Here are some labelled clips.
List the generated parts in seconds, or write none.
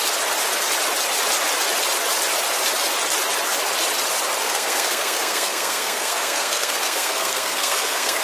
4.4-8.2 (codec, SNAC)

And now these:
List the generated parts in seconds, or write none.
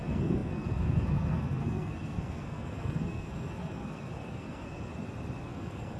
0.0-4.9 (codec, SNAC); 5.4-6.0